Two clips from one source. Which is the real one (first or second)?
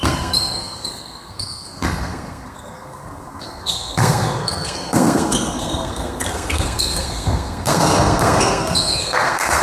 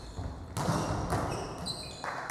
second